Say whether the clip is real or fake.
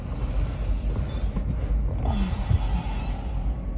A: real